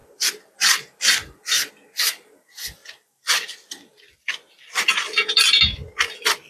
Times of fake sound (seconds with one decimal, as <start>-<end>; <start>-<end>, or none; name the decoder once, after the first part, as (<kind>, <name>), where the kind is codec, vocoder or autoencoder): 0.0-6.5 (vocoder, BigVGAN v2)